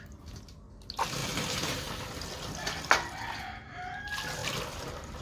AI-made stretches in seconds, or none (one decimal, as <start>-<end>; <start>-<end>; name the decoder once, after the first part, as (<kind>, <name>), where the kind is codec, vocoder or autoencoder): 1.2-1.9 (vocoder, BigVGAN v2); 4.4-5.2